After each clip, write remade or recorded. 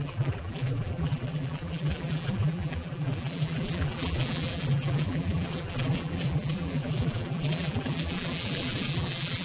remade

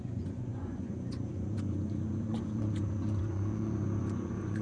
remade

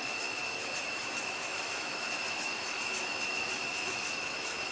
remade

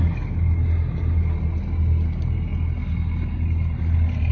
recorded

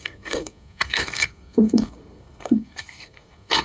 remade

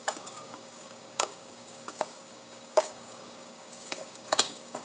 remade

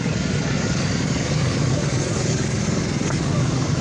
remade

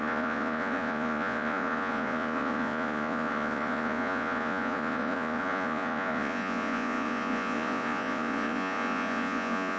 remade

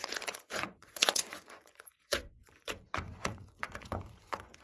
remade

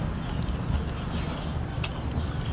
recorded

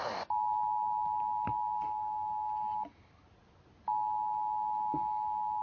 recorded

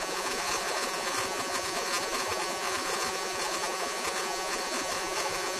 remade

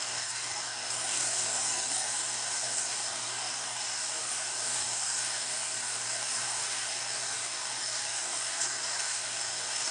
remade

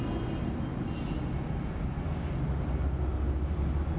recorded